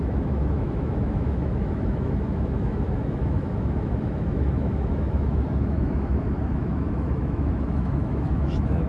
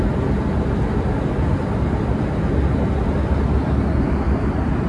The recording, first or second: second